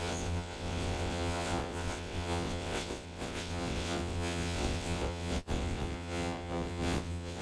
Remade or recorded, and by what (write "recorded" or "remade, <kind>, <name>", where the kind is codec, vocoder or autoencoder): remade, vocoder, WaveNeXt